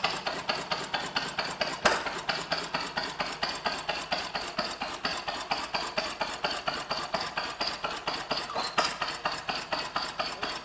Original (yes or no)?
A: yes